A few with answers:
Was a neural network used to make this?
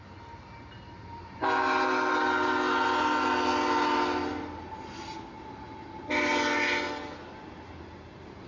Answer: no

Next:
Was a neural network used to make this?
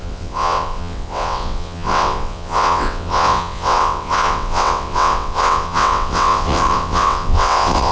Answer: yes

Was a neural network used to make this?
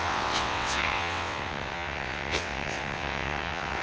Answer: yes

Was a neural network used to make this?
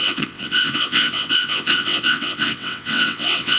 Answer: yes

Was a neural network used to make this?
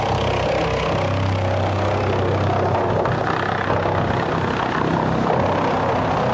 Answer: no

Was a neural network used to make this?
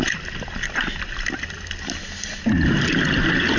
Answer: no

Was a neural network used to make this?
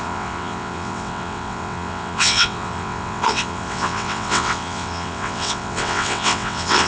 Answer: yes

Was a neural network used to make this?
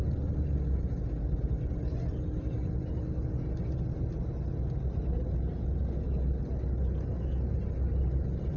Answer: no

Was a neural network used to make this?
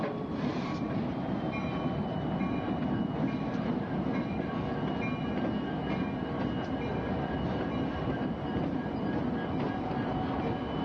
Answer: no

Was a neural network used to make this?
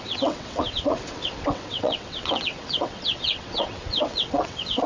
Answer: yes